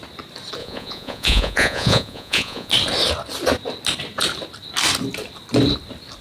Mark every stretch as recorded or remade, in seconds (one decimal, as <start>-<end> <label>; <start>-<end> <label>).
0.0-0.6 recorded; 0.6-2.7 remade; 2.7-6.2 recorded